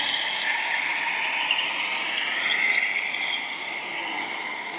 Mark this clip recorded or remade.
recorded